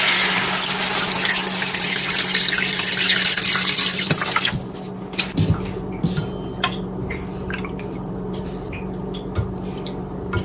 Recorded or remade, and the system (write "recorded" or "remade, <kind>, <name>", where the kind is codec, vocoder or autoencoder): recorded